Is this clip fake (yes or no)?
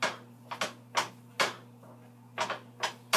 no